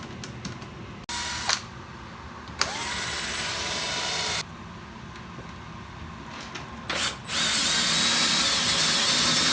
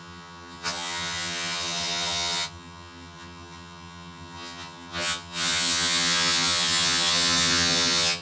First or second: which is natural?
first